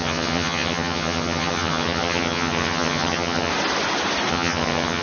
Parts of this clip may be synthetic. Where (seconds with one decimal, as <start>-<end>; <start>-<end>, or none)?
0.0-3.5; 4.3-5.0